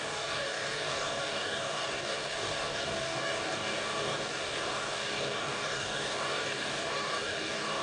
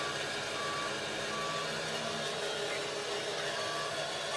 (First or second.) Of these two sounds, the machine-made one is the first